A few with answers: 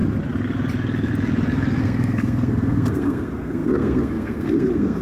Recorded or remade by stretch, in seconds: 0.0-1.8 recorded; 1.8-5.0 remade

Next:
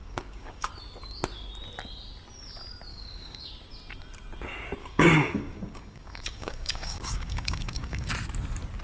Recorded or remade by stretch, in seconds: 0.0-0.7 remade; 0.7-2.9 recorded; 2.9-3.5 remade; 3.5-4.8 recorded; 4.8-8.1 remade; 8.1-8.8 recorded